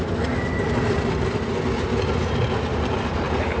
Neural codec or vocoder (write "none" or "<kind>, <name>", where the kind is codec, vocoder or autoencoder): none